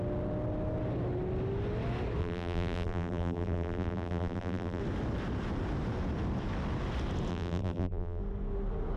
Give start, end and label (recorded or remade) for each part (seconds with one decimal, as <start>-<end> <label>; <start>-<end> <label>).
0.0-2.2 recorded; 2.2-4.8 remade; 4.8-7.3 recorded; 7.3-8.2 remade; 8.2-9.0 recorded